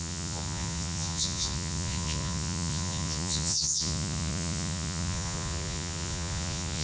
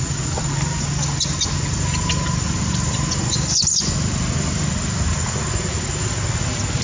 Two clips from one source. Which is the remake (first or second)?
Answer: first